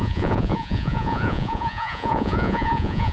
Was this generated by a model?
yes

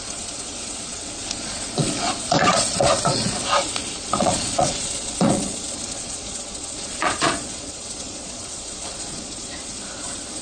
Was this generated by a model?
yes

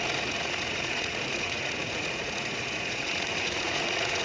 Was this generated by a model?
yes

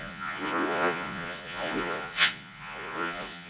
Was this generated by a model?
yes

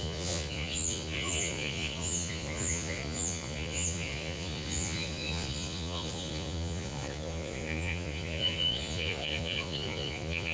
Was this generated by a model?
yes